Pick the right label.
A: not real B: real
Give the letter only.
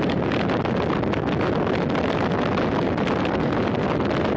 B